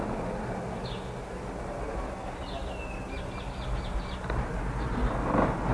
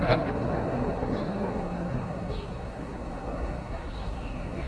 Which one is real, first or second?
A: first